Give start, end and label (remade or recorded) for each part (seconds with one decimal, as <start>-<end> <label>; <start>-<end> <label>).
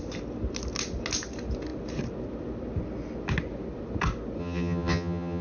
0.0-4.4 recorded; 4.4-5.4 remade